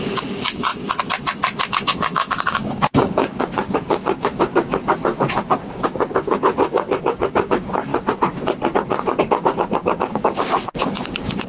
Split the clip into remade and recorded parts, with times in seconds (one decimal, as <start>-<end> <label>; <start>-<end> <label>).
0.0-0.7 remade; 0.7-1.7 recorded; 1.7-5.1 remade; 5.1-5.6 recorded; 5.6-7.9 remade; 7.9-9.2 recorded; 9.2-11.5 remade